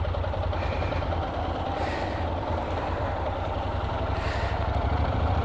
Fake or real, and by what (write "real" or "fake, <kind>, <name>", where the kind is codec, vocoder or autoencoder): fake, vocoder, BigVGAN v2